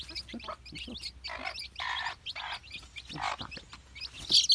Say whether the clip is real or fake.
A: real